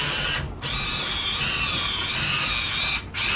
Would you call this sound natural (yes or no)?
yes